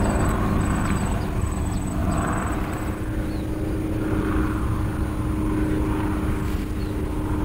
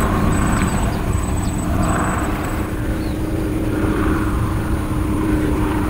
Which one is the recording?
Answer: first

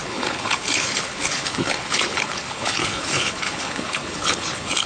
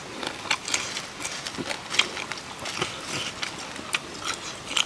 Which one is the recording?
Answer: second